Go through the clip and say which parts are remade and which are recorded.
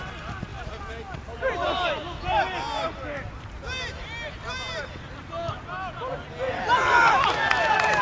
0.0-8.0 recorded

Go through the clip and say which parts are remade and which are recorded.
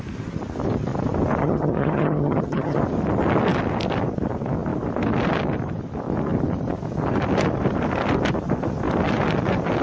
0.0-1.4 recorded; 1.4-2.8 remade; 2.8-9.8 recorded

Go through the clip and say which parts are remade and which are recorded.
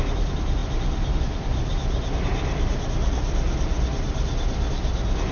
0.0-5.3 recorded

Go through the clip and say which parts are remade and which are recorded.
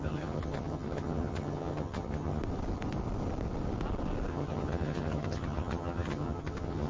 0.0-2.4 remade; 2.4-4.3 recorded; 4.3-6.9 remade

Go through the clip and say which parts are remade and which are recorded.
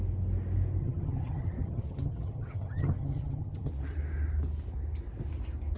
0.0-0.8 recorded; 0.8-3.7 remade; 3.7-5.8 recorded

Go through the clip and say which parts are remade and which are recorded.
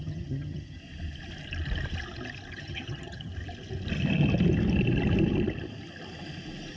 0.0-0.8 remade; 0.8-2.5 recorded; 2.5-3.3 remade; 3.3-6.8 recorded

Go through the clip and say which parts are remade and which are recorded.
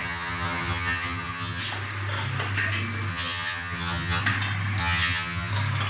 0.0-1.6 remade; 1.6-3.1 recorded; 3.1-4.2 remade; 4.2-4.8 recorded; 4.8-5.5 remade; 5.5-5.9 recorded